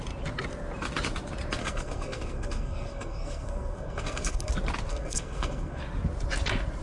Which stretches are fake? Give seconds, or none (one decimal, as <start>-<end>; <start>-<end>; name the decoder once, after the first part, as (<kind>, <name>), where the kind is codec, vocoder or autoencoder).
1.6-4.5 (codec, SNAC); 4.9-5.8